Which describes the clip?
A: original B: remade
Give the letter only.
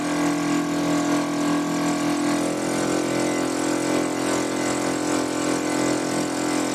A